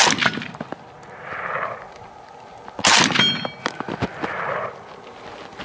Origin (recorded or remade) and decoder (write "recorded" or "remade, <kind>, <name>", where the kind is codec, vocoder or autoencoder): recorded